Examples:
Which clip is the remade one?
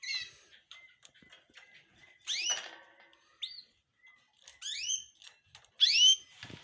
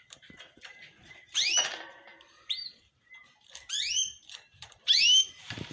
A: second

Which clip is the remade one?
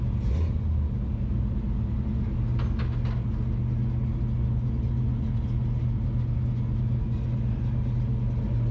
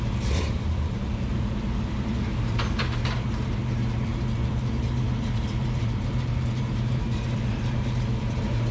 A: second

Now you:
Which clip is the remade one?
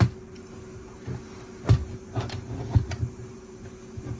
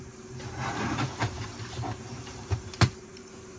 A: second